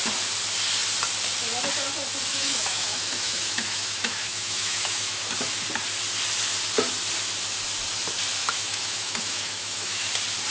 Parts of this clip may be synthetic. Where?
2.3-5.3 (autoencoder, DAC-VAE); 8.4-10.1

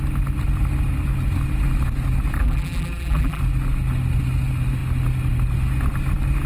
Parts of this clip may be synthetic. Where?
2.4-3.4 (vocoder, BigVGAN v2)

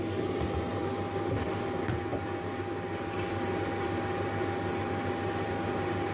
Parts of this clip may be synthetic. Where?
none

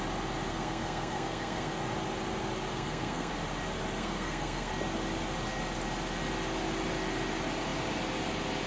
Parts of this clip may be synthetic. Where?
0.5-1.7 (codec, SNAC); 2.7-3.3; 4.0-4.7